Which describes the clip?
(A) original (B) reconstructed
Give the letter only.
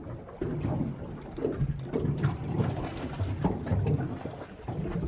A